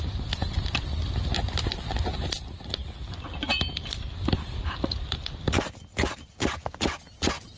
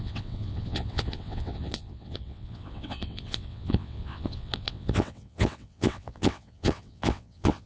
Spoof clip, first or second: second